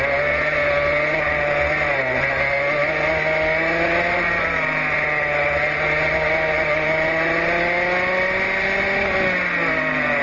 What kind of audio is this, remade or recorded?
recorded